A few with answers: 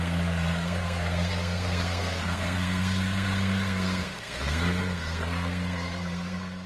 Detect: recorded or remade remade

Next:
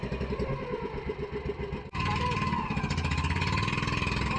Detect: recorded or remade recorded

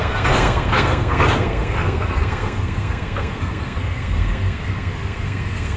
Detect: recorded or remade remade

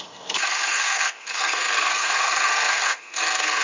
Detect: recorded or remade remade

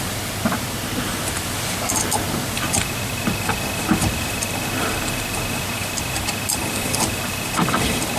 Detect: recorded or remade recorded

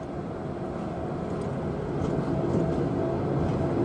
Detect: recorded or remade recorded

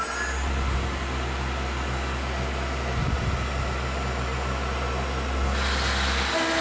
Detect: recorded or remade recorded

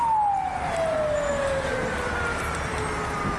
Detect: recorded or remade recorded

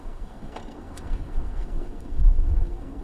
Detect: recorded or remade remade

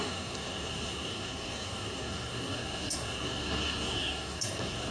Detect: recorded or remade remade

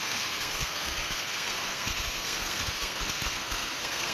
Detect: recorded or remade remade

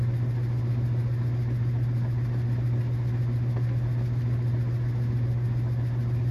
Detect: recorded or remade recorded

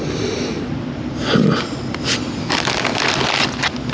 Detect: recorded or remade recorded